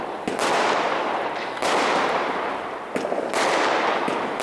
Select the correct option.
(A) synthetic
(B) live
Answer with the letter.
B